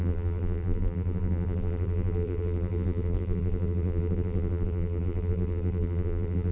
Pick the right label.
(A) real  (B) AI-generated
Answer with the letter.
B